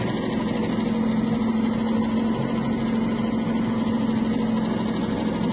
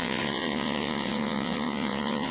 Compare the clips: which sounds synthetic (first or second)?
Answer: second